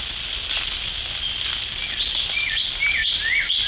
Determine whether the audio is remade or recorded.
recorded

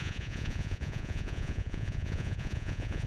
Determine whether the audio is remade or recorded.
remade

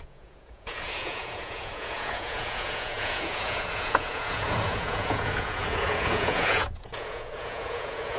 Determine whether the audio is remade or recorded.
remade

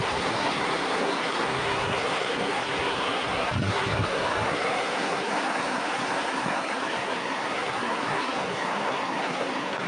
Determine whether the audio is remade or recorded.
remade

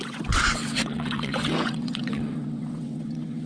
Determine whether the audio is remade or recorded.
remade